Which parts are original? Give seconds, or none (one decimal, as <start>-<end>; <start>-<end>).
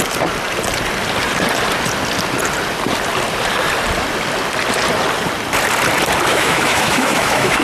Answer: 0.0-6.3